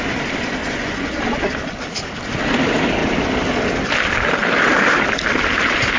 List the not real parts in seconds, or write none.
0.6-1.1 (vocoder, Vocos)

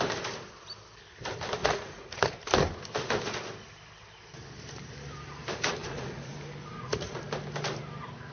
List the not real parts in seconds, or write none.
1.6-2.2 (vocoder, Vocos); 5.8-6.3; 6.7-7.2

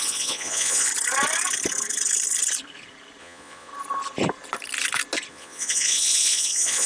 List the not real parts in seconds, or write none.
0.0-0.9 (vocoder, Vocos); 3.2-3.7; 5.3-6.9

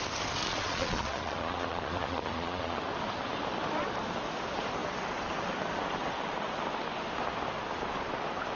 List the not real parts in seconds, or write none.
0.4-2.8 (vocoder, Vocos)

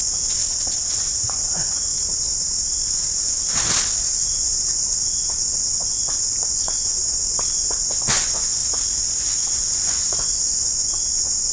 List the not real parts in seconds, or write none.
0.8-1.9 (vocoder, Vocos); 4.1-7.0; 7.8-8.6; 9.2-11.5